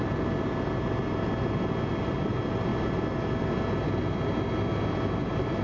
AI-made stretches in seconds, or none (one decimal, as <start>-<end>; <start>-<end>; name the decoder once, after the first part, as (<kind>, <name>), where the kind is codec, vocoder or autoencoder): none